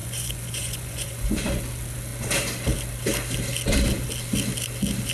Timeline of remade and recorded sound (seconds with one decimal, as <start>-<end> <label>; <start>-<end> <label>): 0.0-1.6 remade; 1.6-5.1 recorded